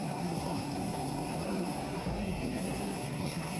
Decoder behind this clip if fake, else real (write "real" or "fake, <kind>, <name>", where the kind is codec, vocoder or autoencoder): fake, codec, SNAC